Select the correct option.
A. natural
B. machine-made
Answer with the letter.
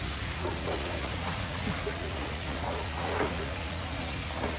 B